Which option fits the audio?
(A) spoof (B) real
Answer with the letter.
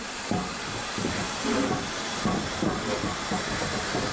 B